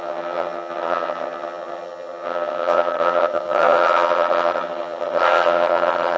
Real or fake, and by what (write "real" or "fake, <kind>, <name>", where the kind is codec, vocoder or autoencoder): fake, vocoder, HiFi-GAN